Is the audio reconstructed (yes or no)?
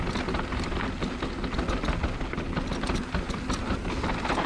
no